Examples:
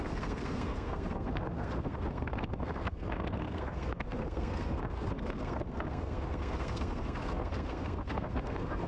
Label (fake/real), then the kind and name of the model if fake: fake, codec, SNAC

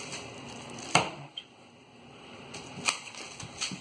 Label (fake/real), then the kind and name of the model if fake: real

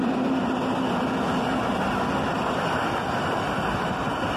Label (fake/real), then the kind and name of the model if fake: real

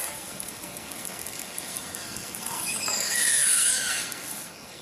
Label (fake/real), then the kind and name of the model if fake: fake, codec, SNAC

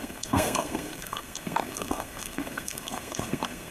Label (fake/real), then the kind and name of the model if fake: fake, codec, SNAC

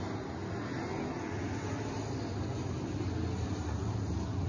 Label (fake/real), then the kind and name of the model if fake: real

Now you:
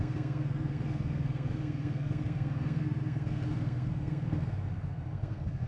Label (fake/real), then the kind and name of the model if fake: fake, codec, SNAC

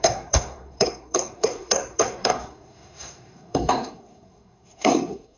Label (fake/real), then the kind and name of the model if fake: fake, codec, SNAC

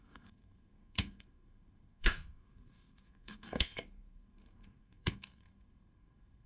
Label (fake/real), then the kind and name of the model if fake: fake, codec, SNAC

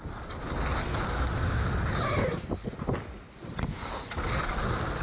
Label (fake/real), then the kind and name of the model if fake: real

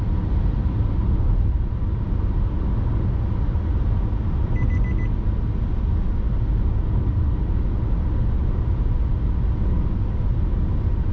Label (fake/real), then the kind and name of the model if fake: real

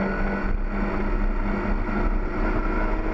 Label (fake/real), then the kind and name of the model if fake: real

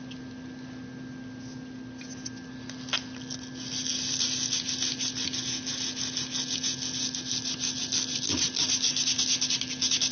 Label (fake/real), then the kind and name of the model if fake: real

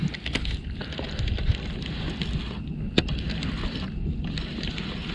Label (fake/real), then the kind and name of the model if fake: real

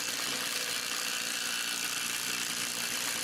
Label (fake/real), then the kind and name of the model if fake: real